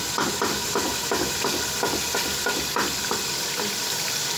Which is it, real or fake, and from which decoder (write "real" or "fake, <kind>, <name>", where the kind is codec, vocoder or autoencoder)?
real